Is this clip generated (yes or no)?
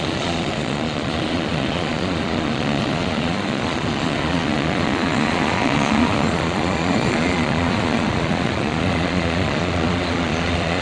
yes